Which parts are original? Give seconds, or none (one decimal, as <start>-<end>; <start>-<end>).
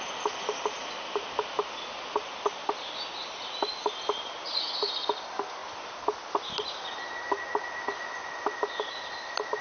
0.0-9.6